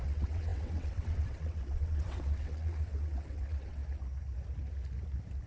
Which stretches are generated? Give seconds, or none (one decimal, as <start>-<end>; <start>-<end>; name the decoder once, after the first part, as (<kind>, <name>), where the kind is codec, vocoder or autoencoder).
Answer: 0.0-3.8 (vocoder, WaveNeXt)